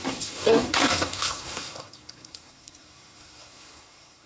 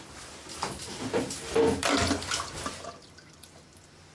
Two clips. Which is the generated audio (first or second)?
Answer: first